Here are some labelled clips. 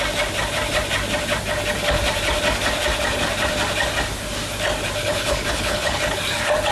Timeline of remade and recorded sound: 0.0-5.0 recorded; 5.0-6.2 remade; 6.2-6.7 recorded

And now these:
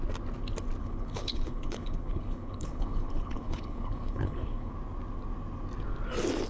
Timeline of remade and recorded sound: 0.0-0.8 recorded; 0.8-4.7 remade; 4.7-6.5 recorded

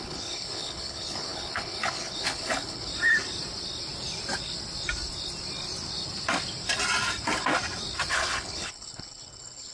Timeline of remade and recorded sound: 0.0-2.9 remade; 2.9-8.1 recorded; 8.1-9.7 remade

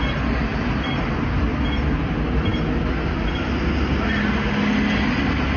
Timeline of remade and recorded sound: 0.0-5.6 recorded

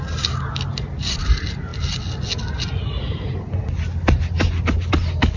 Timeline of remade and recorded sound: 0.0-5.4 recorded

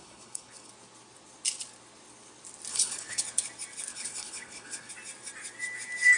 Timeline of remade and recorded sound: 0.0-0.7 remade; 0.7-2.7 recorded; 2.7-3.2 remade; 3.2-3.9 recorded; 3.9-4.9 remade; 4.9-6.2 recorded